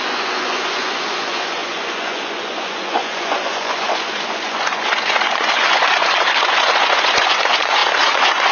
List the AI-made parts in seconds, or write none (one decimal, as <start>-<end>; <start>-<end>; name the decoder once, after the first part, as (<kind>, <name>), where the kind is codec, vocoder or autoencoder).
0.0-8.5 (vocoder, Vocos)